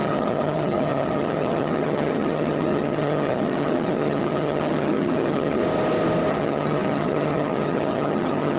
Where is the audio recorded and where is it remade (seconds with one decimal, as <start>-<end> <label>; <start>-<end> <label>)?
0.0-5.6 remade; 5.6-6.3 recorded; 6.3-8.6 remade